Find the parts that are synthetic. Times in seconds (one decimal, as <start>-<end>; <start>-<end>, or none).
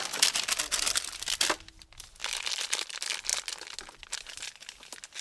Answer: none